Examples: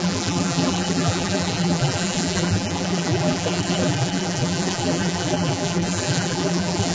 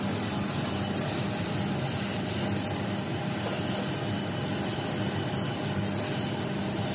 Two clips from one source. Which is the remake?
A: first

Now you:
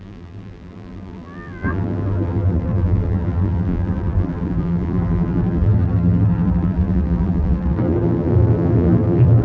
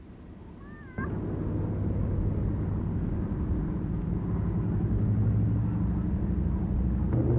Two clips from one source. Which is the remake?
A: first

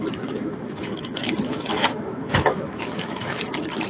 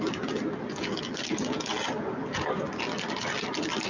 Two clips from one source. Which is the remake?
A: first